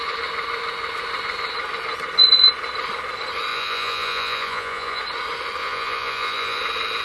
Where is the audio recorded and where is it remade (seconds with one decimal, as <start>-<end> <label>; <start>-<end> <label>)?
0.0-3.5 recorded; 3.5-5.0 remade; 5.0-5.6 recorded; 5.6-6.6 remade; 6.6-7.0 recorded